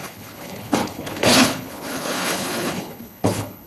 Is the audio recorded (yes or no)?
no